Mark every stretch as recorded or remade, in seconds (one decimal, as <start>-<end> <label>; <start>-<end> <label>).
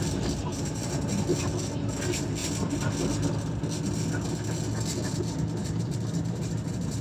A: 0.0-0.5 recorded; 0.5-1.1 remade; 1.1-5.6 recorded; 5.6-7.0 remade